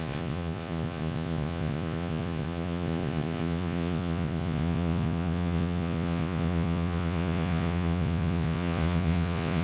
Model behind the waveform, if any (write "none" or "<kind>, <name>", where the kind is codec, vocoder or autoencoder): vocoder, Vocos